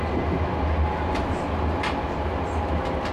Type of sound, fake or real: real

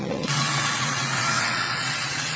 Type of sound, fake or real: fake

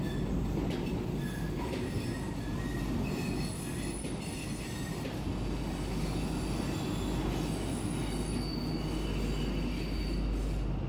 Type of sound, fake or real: real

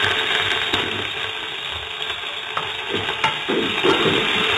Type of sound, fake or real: real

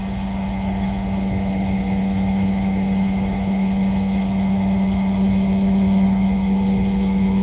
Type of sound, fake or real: fake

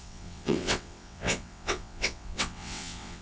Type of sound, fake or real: fake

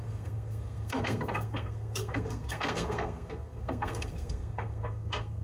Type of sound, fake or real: fake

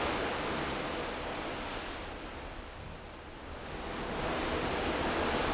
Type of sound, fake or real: real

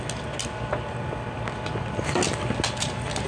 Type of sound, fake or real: real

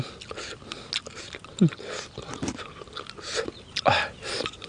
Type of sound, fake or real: real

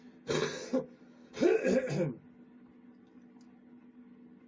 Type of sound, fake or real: real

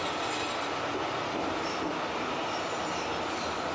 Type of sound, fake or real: real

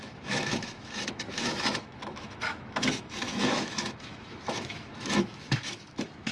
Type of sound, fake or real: fake